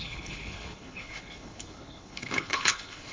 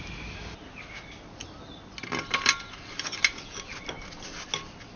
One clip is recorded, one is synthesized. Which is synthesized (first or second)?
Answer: first